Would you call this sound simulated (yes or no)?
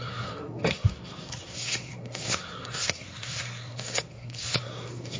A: yes